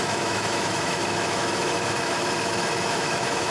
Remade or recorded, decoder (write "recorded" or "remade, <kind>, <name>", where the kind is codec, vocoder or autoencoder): remade, autoencoder, DAC-VAE